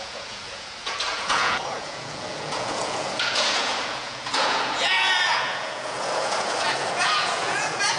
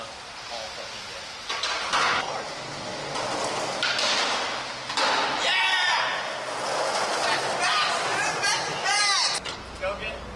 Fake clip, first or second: first